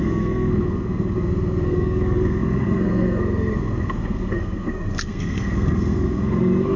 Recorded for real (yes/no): no